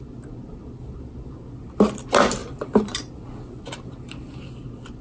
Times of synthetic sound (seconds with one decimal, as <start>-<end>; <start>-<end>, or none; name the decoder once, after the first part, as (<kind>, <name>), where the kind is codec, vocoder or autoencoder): 2.4-2.9 (vocoder, BigVGAN v2)